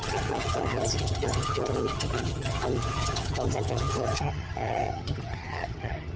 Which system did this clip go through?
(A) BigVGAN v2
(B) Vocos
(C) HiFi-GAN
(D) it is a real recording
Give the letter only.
C